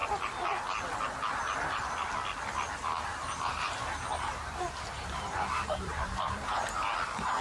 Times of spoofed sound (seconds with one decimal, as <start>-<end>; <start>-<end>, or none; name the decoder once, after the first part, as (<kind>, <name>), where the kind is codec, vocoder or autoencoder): 3.1-6.9 (vocoder, BigVGAN v2)